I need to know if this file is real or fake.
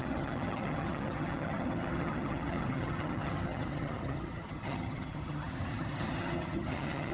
fake